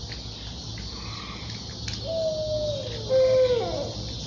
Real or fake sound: real